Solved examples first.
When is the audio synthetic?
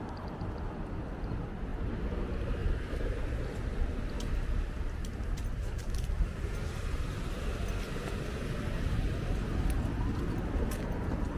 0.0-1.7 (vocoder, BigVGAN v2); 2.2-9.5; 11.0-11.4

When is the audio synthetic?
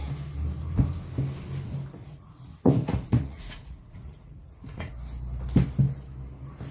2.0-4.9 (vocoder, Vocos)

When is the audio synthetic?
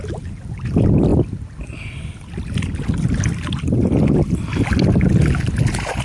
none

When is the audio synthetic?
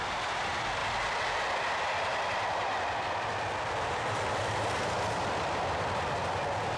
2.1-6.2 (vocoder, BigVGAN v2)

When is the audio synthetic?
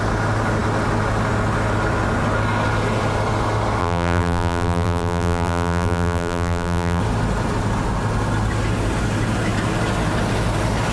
3.8-7.0 (vocoder, BigVGAN v2)